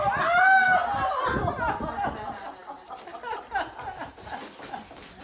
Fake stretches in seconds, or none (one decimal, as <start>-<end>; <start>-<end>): none

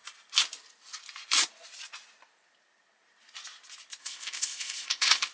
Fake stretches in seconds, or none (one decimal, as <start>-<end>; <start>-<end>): 4.0-5.3

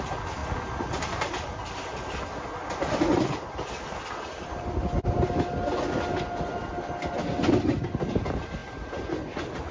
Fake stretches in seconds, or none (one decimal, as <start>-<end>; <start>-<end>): none

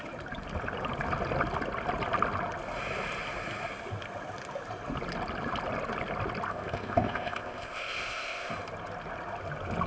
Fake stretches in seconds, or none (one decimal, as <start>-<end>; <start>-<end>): 6.5-8.5

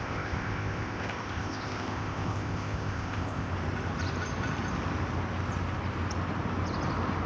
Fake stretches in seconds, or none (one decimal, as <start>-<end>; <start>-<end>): 0.0-3.5

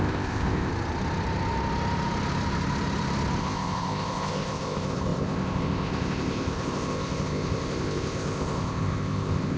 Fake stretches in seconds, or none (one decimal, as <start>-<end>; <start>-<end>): 0.0-0.7; 3.4-9.6

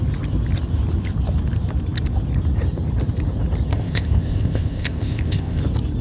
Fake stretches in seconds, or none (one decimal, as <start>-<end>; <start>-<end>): 3.7-5.6